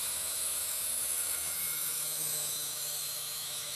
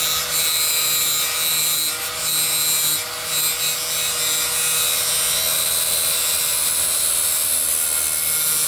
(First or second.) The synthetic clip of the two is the first